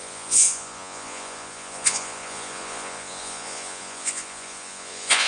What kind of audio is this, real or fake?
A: fake